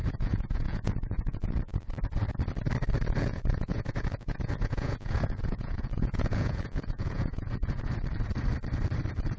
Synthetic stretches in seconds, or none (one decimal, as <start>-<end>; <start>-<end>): 0.0-1.8; 3.2-7.9